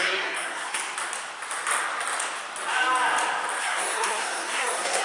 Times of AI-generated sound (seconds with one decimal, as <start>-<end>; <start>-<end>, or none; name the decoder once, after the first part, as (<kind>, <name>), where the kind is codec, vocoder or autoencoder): 0.0-0.8 (codec, SNAC); 3.6-5.0